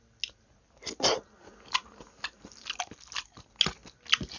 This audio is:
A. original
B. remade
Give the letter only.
A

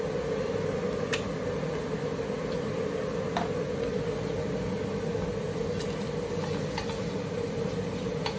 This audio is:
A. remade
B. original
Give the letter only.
B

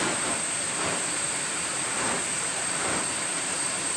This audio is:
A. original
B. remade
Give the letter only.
B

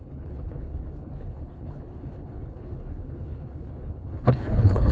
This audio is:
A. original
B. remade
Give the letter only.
B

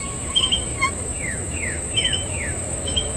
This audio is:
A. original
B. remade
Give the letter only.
B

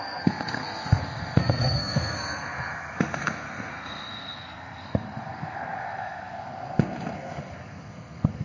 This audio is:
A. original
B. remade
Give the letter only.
B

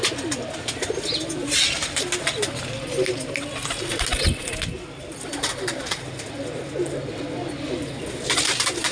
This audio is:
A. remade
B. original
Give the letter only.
B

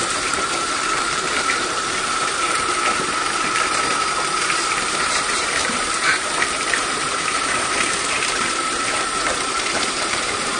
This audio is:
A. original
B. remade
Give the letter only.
B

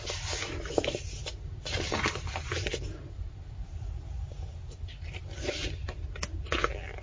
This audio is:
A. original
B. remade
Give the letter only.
A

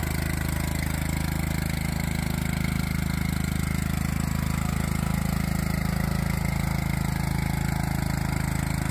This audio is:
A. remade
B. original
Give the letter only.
B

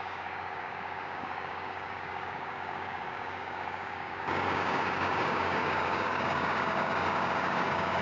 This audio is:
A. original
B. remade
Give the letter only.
B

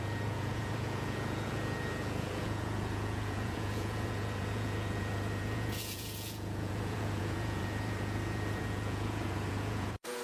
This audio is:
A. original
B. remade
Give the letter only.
B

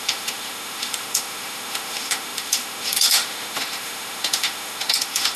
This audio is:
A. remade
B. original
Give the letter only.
A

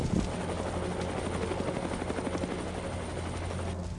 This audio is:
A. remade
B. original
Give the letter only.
B